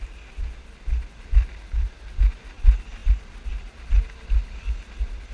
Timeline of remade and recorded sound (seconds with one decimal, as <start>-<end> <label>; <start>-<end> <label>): 0.0-5.3 recorded